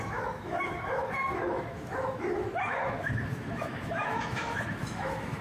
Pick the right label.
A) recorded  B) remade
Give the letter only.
B